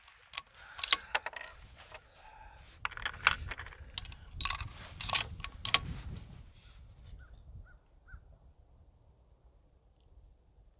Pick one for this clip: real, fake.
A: real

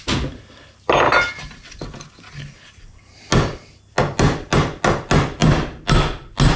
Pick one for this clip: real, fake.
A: real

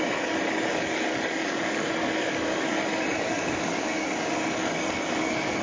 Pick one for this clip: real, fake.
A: fake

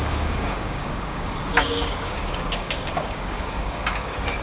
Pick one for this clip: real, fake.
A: fake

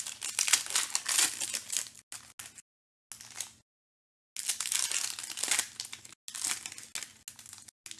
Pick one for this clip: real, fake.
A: real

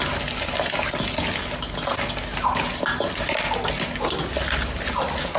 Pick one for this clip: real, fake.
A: real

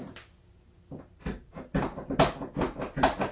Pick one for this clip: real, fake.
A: real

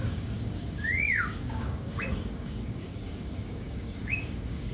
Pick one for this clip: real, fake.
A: fake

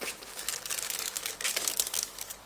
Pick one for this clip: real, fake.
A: fake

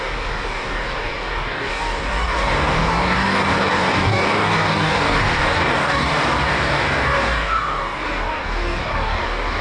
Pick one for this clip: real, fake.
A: fake